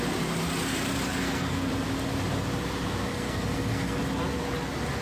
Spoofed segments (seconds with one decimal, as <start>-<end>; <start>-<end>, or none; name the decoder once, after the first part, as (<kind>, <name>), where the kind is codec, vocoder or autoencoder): 1.1-1.7 (codec, SNAC); 3.1-4.0